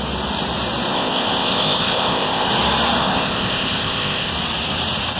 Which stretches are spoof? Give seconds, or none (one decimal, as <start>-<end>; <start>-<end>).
0.9-2.5; 3.0-4.3